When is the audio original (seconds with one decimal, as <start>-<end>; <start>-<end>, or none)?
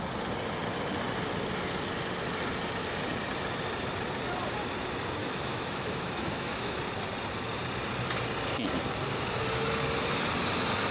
0.0-5.2; 6.8-10.9